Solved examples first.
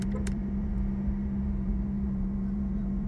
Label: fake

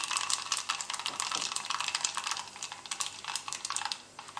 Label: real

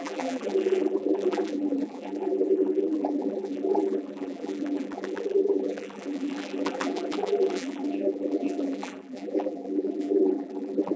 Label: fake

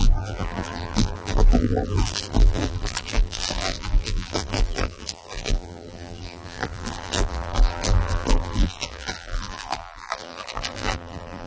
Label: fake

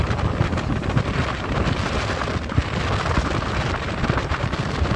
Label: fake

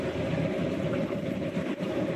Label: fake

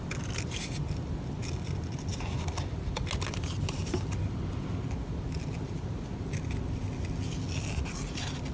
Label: real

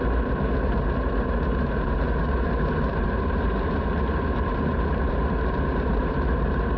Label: fake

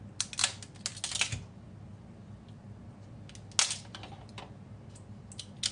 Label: real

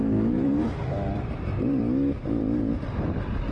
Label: fake